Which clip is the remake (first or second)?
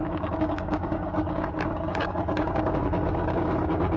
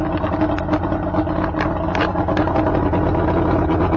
first